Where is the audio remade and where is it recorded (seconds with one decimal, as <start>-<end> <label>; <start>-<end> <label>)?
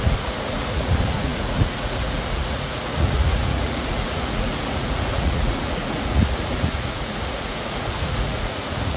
0.0-9.0 remade